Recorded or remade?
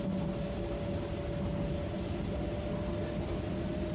recorded